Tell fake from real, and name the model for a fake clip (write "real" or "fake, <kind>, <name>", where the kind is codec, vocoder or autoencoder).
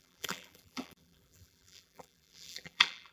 fake, vocoder, BigVGAN v2